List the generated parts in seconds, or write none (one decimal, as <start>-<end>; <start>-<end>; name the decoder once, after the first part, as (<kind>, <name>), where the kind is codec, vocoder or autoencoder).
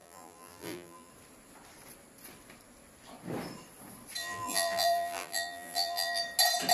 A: 0.0-1.1 (vocoder, BigVGAN v2); 4.2-6.2